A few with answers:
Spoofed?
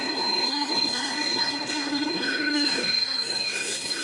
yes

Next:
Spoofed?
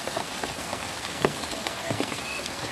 yes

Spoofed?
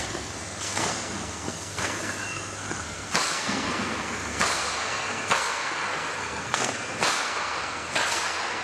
yes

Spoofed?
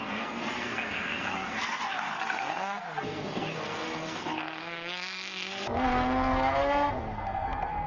yes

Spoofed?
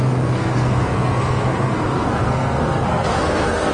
yes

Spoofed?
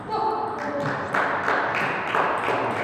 no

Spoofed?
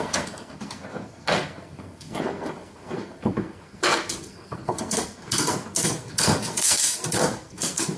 yes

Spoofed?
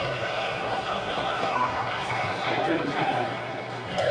yes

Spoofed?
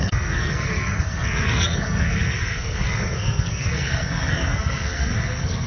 yes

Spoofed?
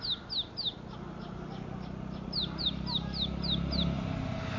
no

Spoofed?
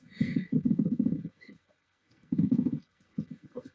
yes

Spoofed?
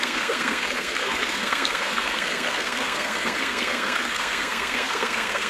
yes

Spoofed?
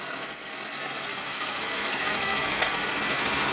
yes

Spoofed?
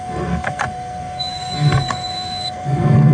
yes